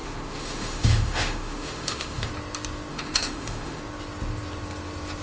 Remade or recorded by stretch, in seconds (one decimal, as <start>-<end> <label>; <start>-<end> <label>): 0.0-2.3 remade; 2.3-2.9 recorded; 2.9-3.8 remade; 3.8-5.2 recorded